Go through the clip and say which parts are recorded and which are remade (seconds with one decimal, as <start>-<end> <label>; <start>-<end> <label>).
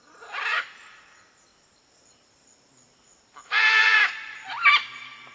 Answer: 0.0-5.3 recorded